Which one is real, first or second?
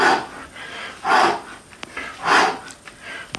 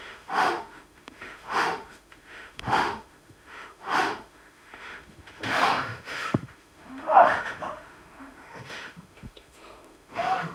first